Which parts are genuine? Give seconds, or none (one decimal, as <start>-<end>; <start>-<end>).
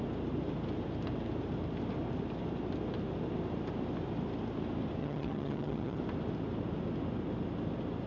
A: 0.0-5.0; 6.0-8.1